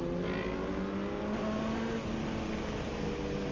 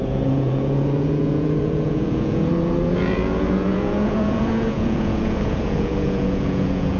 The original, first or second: first